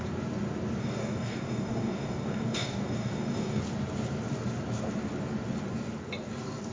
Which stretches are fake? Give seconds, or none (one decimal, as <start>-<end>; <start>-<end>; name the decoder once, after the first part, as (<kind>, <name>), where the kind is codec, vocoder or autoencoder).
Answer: 0.8-3.6 (codec, DAC)